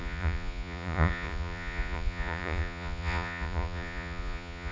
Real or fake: fake